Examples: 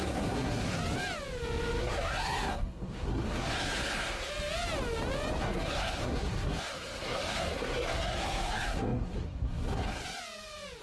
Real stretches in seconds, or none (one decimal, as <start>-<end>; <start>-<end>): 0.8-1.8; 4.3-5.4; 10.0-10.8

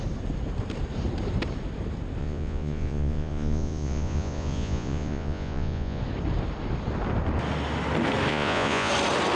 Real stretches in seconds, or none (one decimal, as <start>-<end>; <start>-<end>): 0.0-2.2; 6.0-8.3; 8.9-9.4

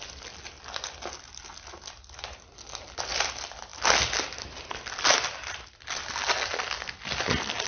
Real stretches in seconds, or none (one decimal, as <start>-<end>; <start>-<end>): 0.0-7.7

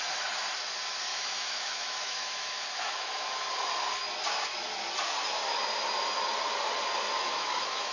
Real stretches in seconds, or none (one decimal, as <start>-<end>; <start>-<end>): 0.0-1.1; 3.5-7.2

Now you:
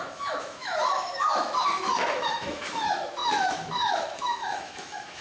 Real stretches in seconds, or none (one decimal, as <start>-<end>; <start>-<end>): none